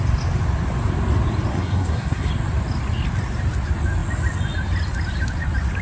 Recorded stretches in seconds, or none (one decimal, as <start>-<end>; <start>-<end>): 0.0-1.5; 2.3-5.8